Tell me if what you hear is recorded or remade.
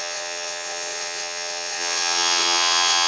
remade